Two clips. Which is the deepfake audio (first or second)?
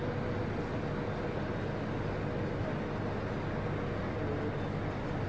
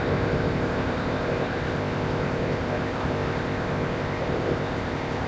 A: second